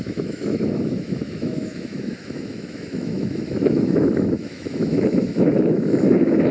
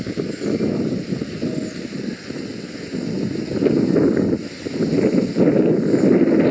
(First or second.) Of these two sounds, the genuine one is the second